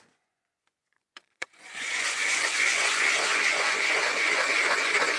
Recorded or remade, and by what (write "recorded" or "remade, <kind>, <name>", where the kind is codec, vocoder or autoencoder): remade, vocoder, Vocos